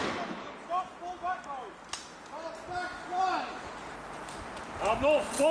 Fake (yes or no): no